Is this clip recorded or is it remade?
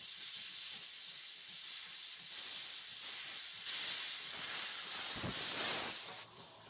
recorded